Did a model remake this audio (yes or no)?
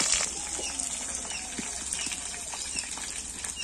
no